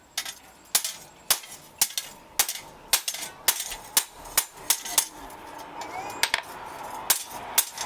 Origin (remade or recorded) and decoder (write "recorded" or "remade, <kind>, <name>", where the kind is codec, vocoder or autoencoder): recorded